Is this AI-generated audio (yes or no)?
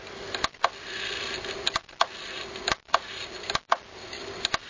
no